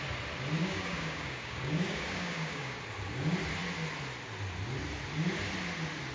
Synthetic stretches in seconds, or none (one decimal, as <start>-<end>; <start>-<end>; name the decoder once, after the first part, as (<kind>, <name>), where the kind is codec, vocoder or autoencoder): 0.6-2.8 (codec, DAC)